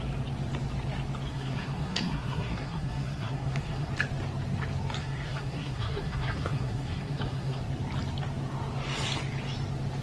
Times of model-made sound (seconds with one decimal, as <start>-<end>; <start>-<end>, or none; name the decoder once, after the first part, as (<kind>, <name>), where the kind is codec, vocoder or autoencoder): 1.3-3.9 (codec, SNAC); 5.0-7.6